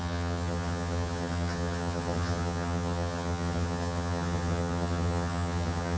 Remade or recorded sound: remade